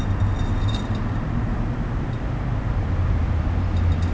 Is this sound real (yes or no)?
yes